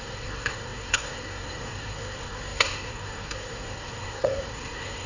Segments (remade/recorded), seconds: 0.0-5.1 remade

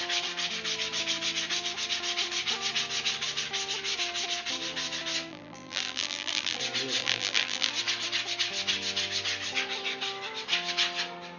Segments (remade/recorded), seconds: 0.0-5.3 recorded; 5.3-6.6 remade; 6.6-7.0 recorded; 7.0-7.7 remade; 7.7-11.4 recorded